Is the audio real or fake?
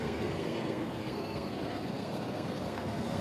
fake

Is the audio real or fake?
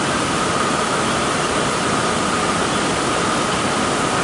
real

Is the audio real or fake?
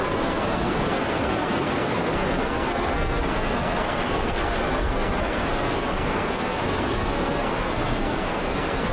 fake